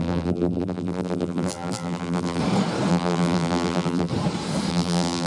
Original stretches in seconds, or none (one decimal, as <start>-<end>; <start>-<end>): 2.4-2.9; 4.1-4.7

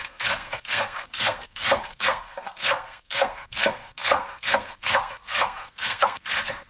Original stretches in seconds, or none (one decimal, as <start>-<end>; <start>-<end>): none

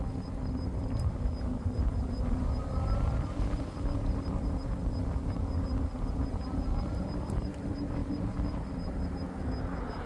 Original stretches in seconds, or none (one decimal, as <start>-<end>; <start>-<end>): 0.0-10.1